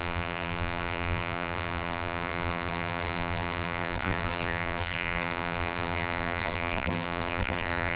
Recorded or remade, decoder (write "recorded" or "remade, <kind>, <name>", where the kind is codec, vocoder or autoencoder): remade, vocoder, BigVGAN v2